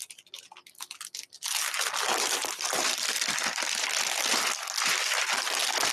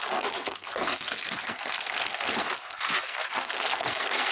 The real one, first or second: first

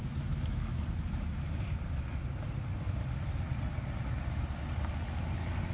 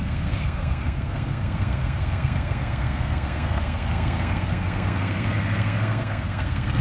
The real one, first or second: first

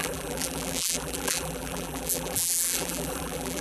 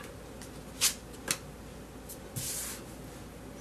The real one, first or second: second